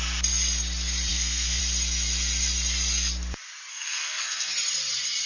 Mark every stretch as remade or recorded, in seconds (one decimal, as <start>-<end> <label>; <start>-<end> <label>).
0.0-1.1 recorded; 1.1-1.6 remade; 1.6-3.7 recorded; 3.7-4.5 remade; 4.5-5.3 recorded